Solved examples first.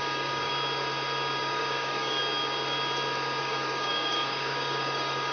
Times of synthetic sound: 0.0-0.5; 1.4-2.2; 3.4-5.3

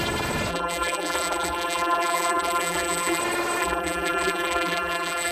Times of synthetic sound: 0.5-3.2; 3.6-5.3

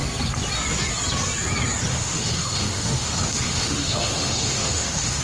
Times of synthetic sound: 1.9-5.2

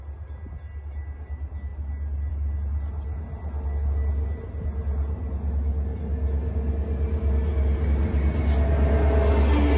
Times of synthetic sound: none

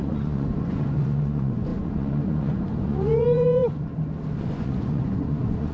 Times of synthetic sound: 0.0-3.9; 4.4-5.7